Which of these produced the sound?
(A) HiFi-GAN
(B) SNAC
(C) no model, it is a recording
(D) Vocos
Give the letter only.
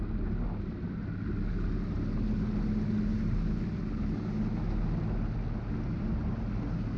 C